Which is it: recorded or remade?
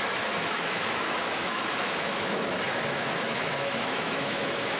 remade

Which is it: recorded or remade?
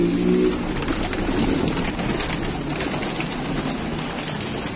recorded